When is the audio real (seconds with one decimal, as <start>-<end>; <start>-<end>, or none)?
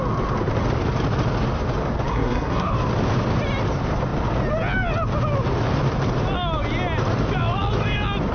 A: 0.0-2.1; 2.7-8.3